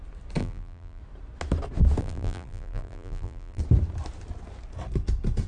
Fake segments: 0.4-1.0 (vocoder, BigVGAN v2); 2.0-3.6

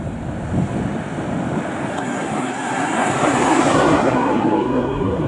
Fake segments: 1.9-5.3 (codec, SNAC)

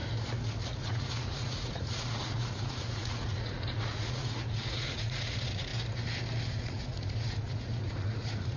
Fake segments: 0.8-5.7 (vocoder, Vocos); 6.5-8.6

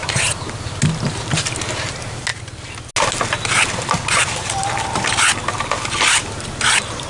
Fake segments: 4.2-5.0 (vocoder, BigVGAN v2)